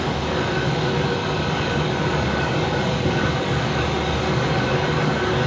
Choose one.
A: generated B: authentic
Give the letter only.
A